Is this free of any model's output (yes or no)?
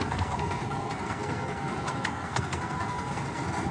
no